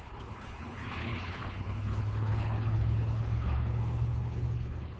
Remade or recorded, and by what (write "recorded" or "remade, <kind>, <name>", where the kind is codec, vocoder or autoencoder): remade, codec, HILCodec